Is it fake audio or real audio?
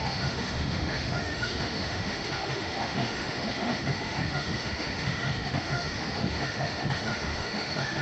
fake